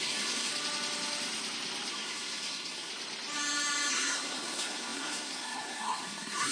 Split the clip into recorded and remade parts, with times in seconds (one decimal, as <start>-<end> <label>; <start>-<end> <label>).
0.0-0.5 remade; 0.5-1.9 recorded; 1.9-2.9 remade; 2.9-3.9 recorded; 3.9-6.5 remade